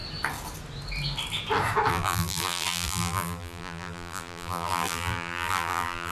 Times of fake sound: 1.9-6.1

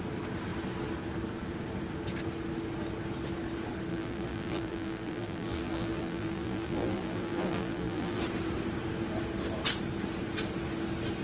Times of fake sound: 3.9-8.2